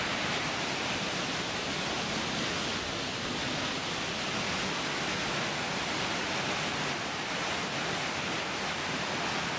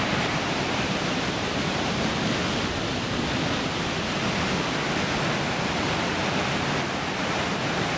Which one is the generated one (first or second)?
second